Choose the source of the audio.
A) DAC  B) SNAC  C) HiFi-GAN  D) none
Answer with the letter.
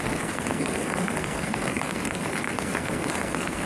B